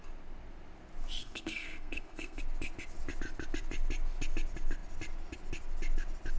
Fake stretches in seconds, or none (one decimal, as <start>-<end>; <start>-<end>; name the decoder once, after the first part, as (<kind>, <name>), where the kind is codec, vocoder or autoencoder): 1.2-2.4 (codec, SNAC)